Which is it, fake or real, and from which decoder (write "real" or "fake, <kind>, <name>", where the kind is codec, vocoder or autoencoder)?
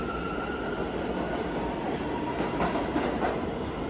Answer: real